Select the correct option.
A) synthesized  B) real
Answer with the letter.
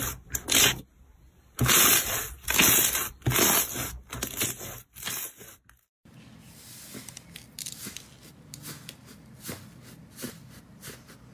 B